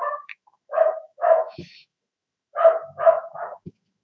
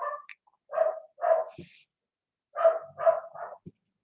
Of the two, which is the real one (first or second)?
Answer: second